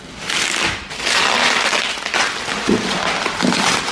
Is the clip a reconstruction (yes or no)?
no